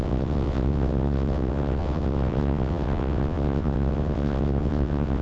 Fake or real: fake